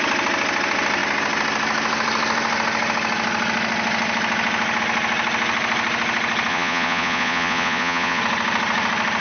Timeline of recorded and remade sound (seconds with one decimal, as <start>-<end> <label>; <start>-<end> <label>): 0.0-6.5 recorded; 6.5-8.2 remade; 8.2-9.2 recorded